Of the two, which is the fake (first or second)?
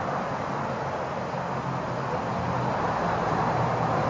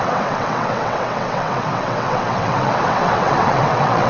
second